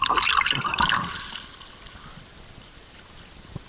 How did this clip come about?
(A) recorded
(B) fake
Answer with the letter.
A